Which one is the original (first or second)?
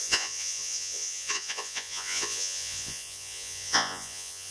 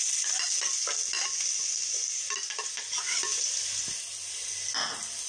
second